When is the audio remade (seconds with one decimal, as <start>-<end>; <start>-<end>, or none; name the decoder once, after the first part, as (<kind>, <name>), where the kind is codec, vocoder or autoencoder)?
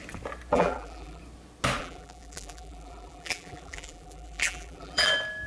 0.5-1.2 (vocoder, BigVGAN v2); 1.8-5.1